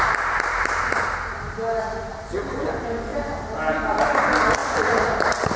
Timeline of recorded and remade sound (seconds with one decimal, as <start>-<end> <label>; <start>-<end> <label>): 0.0-2.1 recorded; 2.1-2.6 remade; 2.6-3.1 recorded; 3.1-4.1 remade; 4.1-4.6 recorded; 4.6-5.6 remade